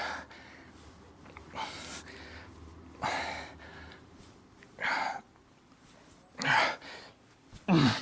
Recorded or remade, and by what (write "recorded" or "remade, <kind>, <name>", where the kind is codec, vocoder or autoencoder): remade, vocoder, BigVGAN v2